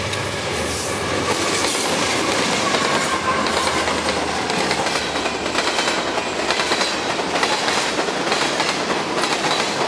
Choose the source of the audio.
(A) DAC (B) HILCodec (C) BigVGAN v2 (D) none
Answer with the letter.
D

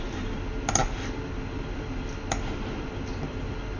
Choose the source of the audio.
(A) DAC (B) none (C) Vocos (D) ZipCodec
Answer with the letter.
B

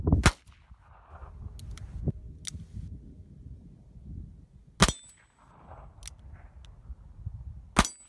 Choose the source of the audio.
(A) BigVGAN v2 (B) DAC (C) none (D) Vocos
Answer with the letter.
C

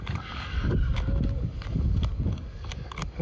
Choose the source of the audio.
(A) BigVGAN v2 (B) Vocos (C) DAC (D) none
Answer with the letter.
C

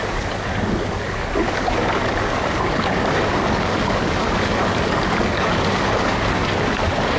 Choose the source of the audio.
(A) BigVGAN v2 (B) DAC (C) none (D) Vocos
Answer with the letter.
B